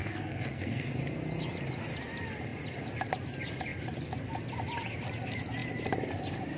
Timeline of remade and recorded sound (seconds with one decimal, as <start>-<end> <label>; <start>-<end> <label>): 0.0-0.9 remade; 0.9-6.6 recorded